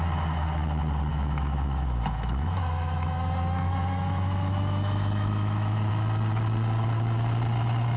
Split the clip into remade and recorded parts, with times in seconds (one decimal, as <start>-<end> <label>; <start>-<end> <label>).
0.0-1.1 recorded; 1.1-5.9 remade; 5.9-8.0 recorded